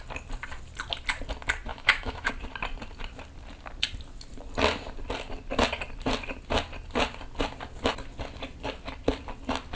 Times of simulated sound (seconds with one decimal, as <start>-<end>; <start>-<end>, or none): 1.7-2.3